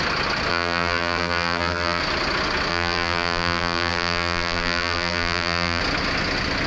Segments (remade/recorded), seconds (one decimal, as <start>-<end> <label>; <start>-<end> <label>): 0.0-0.5 recorded; 0.5-2.0 remade; 2.0-2.7 recorded; 2.7-5.8 remade; 5.8-6.7 recorded